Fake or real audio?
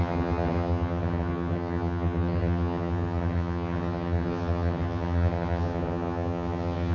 fake